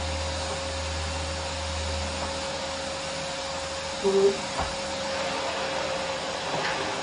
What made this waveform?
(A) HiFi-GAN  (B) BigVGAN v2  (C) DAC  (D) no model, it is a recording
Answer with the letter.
D